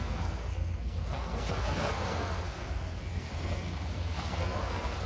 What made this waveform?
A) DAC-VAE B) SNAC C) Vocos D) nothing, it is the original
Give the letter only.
B